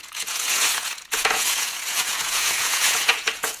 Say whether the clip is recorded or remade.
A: remade